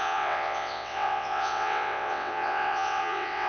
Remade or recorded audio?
remade